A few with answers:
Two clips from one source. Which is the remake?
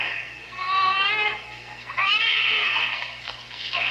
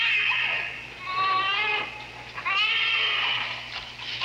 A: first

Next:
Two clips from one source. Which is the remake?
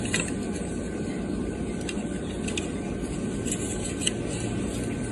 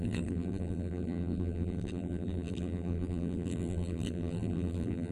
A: second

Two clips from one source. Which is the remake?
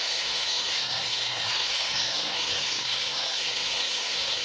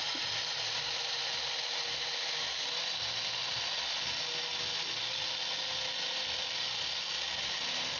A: first